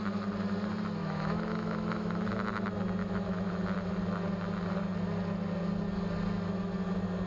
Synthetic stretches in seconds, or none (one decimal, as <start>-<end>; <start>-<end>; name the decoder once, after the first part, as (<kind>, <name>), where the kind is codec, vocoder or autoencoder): 1.0-2.3 (autoencoder, DAC-VAE); 3.0-3.5